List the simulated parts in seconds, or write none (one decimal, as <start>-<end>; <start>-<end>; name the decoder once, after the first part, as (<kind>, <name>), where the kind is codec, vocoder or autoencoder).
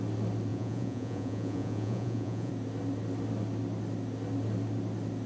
0.5-2.5 (vocoder, Vocos)